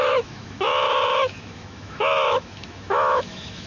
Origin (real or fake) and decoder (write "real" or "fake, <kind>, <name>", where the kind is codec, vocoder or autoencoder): fake, autoencoder, DAC-VAE